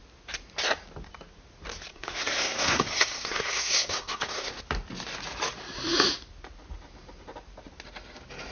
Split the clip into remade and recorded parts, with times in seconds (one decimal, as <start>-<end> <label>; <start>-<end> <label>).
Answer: 0.0-1.9 recorded; 1.9-4.6 remade; 4.6-8.5 recorded